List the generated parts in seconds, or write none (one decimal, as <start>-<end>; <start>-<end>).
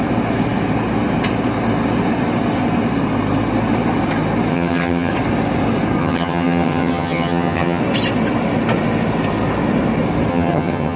4.5-5.1; 6.0-7.8; 10.3-11.0